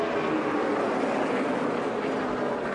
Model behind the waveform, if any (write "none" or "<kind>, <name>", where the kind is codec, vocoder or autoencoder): none